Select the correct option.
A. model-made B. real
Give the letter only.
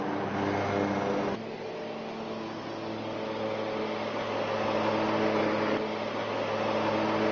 B